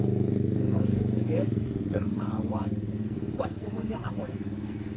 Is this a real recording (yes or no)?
no